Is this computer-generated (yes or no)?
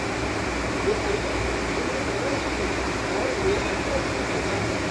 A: no